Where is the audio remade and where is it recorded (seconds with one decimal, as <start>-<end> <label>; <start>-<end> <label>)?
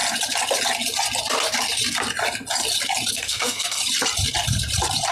0.0-3.1 recorded; 3.1-3.8 remade; 3.8-5.1 recorded